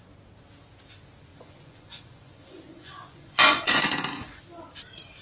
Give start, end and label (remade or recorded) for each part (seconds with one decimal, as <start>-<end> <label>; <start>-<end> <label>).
0.0-1.3 recorded; 1.3-4.4 remade; 4.4-5.2 recorded